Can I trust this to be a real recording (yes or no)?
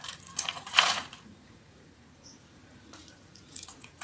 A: no